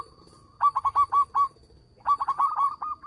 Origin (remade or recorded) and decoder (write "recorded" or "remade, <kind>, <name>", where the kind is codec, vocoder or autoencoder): recorded